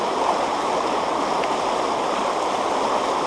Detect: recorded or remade recorded